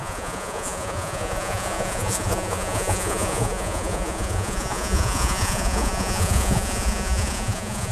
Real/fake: fake